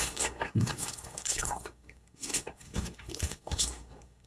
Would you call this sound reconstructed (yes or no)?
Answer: yes